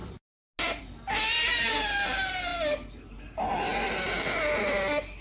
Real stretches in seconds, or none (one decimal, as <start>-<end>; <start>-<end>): 0.0-5.2